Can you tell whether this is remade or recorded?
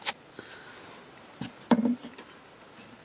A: recorded